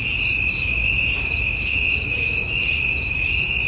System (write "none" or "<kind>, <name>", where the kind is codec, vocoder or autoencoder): vocoder, BigVGAN v2